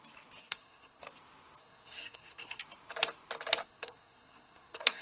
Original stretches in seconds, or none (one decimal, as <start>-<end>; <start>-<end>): 0.0-0.4; 1.0-1.6; 2.6-3.6